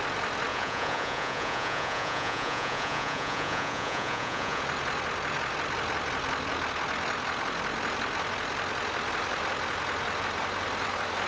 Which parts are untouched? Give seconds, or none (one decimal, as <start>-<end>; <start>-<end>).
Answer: 0.0-0.5; 4.6-11.3